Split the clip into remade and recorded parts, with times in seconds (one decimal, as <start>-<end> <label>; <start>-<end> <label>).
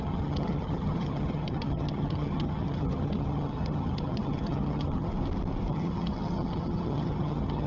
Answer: 0.0-5.1 remade; 5.1-5.7 recorded; 5.7-7.7 remade